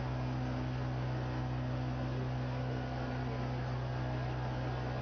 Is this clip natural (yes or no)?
yes